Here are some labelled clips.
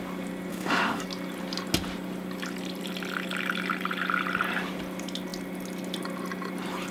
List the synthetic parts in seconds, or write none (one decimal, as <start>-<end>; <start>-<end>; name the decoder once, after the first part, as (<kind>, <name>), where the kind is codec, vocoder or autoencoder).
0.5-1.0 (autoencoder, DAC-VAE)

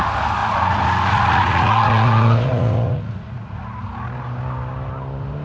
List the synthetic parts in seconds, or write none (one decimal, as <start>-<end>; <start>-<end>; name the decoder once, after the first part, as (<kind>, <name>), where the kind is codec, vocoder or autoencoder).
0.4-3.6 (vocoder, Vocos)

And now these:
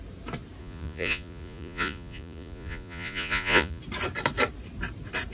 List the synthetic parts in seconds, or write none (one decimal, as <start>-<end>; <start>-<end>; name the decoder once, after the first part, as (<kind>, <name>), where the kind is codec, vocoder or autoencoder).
0.6-3.8 (vocoder, Vocos)